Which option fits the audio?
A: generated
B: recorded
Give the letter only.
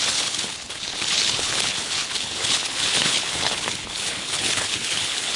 A